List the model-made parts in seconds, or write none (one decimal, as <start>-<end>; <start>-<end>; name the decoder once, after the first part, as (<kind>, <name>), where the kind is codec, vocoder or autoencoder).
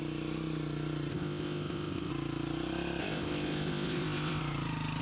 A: 1.1-2.1 (codec, ZipCodec); 3.0-4.4